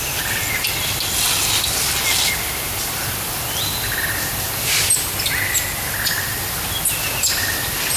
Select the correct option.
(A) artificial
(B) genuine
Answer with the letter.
B